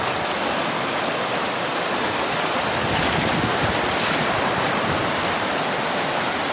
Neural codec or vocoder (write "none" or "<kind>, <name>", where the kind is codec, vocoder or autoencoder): none